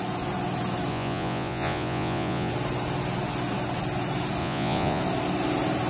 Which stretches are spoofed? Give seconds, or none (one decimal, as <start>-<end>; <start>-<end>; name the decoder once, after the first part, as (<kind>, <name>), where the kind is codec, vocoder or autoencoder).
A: 0.9-2.5 (vocoder, Vocos); 4.4-5.0